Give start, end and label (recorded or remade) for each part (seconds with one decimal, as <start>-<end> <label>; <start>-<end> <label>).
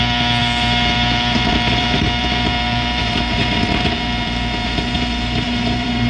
0.0-6.1 remade